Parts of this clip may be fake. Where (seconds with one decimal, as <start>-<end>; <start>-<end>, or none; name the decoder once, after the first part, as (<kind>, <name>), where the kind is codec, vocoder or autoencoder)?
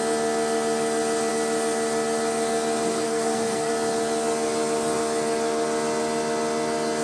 2.9-3.7 (codec, SNAC)